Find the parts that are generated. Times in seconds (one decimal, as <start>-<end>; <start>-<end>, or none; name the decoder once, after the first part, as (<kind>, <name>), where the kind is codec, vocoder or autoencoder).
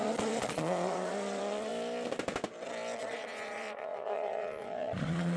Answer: 0.0-1.7 (vocoder, Vocos); 3.0-5.4